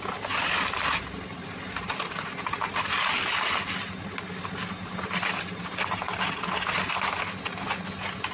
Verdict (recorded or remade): recorded